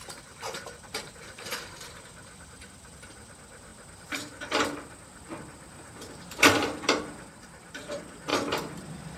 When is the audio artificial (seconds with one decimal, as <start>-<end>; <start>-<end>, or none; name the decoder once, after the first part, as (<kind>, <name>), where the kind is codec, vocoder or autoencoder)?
0.0-9.2 (vocoder, BigVGAN v2)